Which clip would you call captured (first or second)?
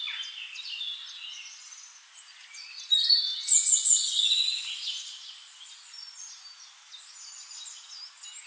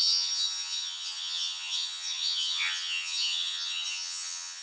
first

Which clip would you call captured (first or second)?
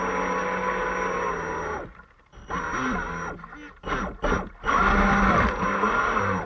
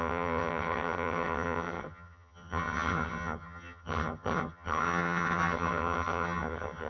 first